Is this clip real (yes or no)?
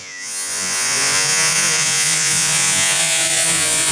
no